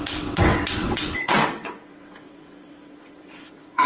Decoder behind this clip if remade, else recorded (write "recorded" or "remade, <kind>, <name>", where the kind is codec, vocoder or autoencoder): remade, vocoder, WaveNeXt